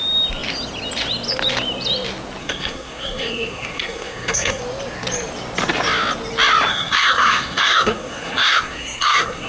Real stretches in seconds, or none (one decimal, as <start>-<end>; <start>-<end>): 0.0-2.4; 4.6-6.7